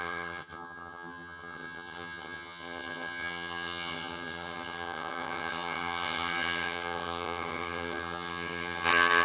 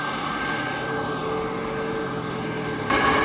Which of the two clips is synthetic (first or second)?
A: first